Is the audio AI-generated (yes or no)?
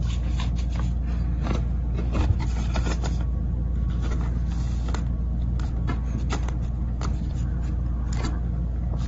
no